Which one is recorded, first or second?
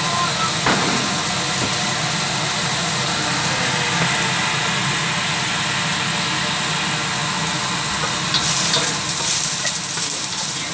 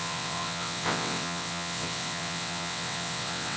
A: first